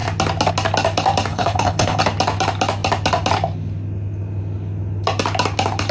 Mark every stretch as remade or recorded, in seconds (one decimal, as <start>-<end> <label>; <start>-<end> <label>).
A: 0.0-1.3 recorded; 1.3-2.0 remade; 2.0-5.9 recorded